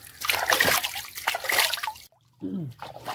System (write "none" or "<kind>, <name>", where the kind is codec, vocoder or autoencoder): none